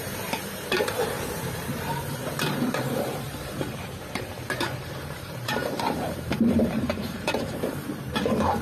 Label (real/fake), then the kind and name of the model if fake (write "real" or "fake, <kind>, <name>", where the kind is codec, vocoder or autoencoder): fake, vocoder, BigVGAN v2